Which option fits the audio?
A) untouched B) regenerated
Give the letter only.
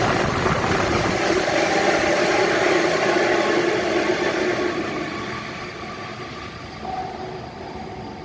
A